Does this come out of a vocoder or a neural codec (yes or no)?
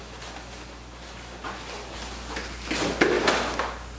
no